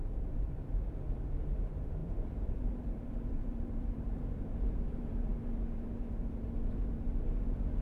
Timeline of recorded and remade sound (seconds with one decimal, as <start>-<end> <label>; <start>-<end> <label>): 0.0-7.8 remade